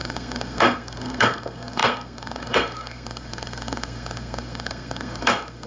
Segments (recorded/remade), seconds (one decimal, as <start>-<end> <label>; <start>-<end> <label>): 0.0-5.7 remade